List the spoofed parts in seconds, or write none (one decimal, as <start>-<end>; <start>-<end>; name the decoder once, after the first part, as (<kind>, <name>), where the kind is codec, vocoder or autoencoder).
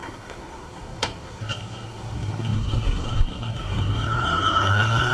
0.0-5.1 (codec, SNAC)